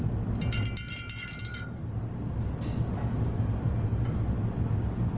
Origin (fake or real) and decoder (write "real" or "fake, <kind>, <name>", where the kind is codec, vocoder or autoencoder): real